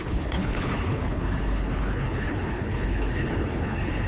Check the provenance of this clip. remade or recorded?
remade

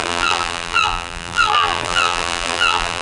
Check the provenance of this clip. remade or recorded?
remade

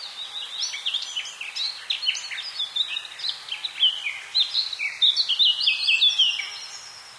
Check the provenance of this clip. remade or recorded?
recorded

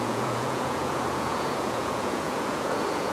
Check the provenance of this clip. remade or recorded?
remade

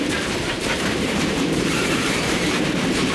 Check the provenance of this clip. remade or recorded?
remade